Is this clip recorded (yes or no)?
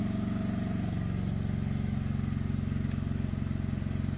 yes